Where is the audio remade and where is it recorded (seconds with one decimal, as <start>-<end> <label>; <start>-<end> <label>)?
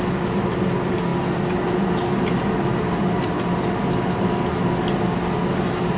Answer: 0.0-6.0 recorded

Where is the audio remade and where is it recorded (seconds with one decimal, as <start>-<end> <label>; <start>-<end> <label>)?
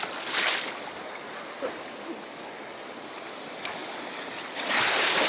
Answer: 0.0-5.3 recorded